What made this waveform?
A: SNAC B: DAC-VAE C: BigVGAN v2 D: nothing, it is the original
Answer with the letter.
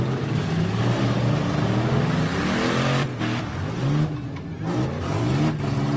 D